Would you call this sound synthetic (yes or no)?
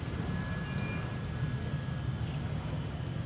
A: no